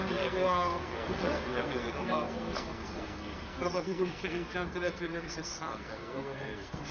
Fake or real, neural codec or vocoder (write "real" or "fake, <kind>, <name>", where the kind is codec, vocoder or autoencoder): fake, codec, SNAC